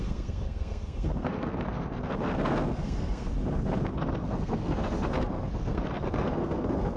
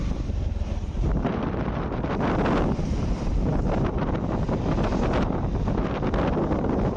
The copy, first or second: first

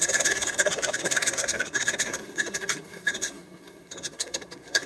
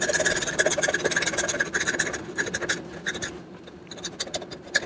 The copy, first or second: first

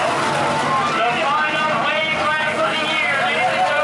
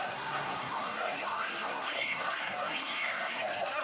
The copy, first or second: second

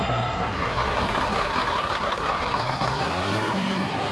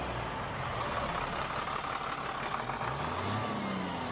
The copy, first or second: first